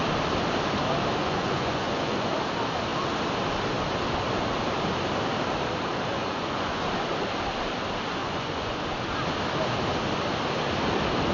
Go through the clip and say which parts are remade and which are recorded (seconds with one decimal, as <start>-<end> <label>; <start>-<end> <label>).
0.0-1.2 recorded; 1.2-2.3 remade; 2.3-6.1 recorded; 6.1-6.8 remade; 6.8-8.2 recorded; 8.2-8.8 remade; 8.8-11.3 recorded